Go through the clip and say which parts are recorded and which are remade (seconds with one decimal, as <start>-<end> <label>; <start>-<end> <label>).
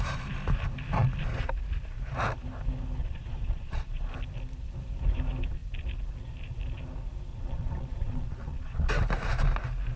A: 0.0-3.0 recorded; 3.0-4.1 remade; 4.1-7.3 recorded; 7.3-8.9 remade; 8.9-10.0 recorded